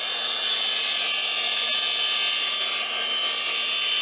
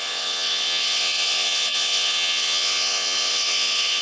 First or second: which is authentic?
first